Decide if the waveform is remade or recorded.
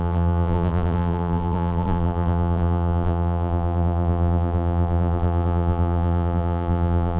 remade